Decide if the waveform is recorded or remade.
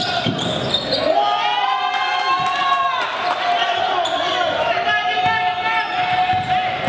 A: recorded